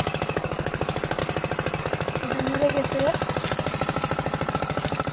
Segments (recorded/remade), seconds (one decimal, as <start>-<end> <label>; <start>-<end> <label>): 0.0-1.2 remade; 1.2-1.8 recorded; 1.8-2.3 remade; 2.3-4.5 recorded; 4.5-5.1 remade